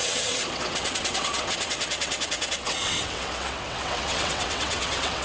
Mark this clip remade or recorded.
remade